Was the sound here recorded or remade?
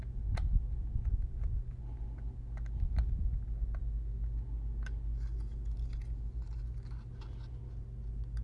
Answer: recorded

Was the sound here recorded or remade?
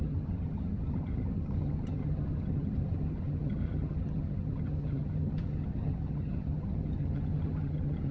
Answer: remade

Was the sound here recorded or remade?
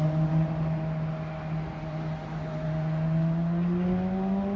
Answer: recorded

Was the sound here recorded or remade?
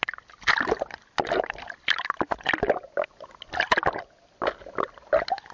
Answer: recorded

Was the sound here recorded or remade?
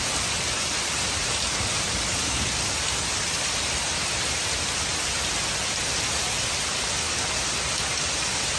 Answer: recorded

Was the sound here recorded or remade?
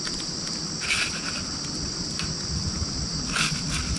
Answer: recorded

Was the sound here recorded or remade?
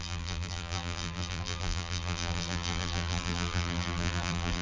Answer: remade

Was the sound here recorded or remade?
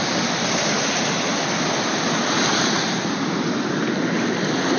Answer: recorded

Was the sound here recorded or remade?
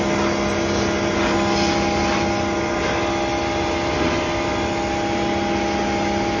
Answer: recorded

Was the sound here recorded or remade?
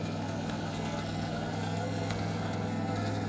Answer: remade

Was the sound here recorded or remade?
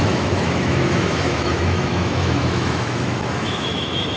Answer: remade